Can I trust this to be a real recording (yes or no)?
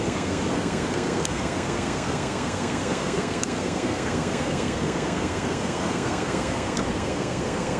no